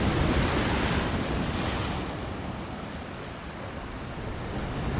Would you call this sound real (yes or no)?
yes